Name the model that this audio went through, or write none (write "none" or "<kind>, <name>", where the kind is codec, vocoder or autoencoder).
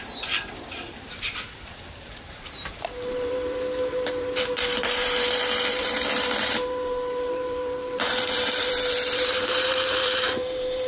vocoder, BigVGAN v2